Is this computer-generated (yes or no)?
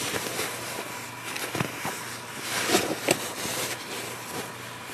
no